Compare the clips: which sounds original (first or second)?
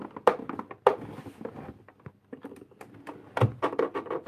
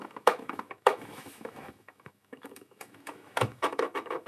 first